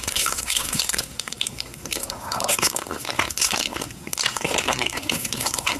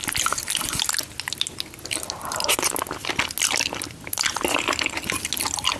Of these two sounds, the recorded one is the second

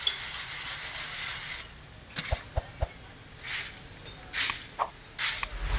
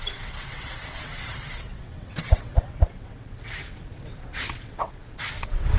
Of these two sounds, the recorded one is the first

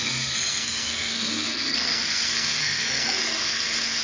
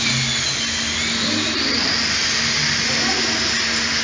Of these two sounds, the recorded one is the second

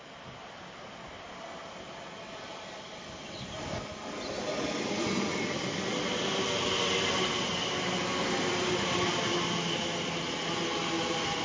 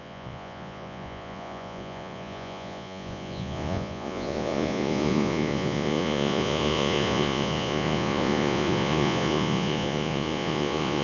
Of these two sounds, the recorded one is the first